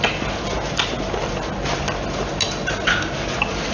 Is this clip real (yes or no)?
yes